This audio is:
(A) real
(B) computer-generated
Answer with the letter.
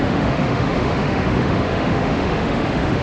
B